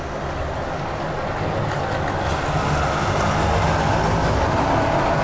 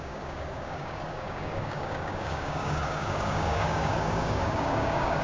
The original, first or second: first